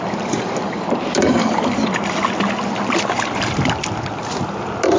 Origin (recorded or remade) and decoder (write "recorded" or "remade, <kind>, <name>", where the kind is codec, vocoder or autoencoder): recorded